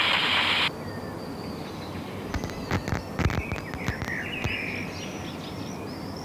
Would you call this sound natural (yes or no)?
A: yes